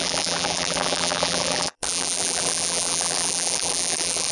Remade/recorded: remade